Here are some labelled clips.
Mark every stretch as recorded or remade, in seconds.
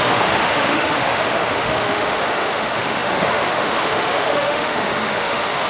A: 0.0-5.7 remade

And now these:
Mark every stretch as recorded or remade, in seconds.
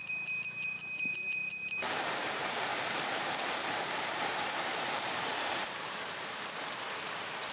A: 0.0-2.7 recorded; 2.7-6.8 remade; 6.8-7.5 recorded